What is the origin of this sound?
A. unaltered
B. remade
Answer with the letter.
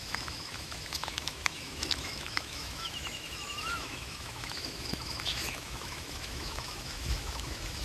B